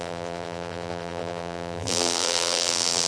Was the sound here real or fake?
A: fake